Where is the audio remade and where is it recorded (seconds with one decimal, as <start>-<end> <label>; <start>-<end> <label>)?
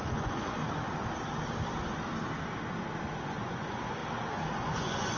0.0-0.6 remade; 0.6-3.2 recorded; 3.2-4.0 remade; 4.0-4.6 recorded; 4.6-5.2 remade